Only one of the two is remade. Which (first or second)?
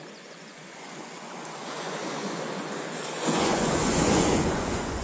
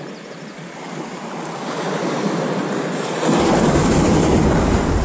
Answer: first